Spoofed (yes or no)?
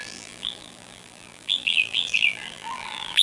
yes